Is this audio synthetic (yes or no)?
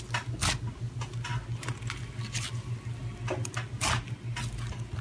no